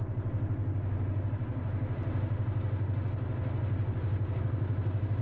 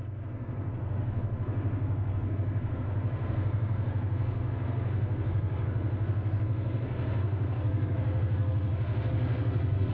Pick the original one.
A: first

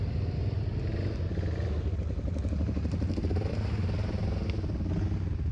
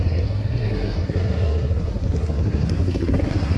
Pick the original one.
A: first